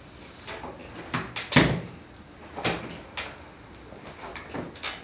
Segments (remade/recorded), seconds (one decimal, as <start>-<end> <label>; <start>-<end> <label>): 0.0-5.0 recorded